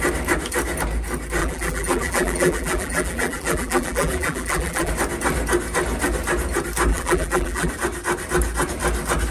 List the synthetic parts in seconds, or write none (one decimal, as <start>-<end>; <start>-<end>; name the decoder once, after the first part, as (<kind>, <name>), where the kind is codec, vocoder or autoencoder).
1.4-4.9 (vocoder, BigVGAN v2); 6.9-7.7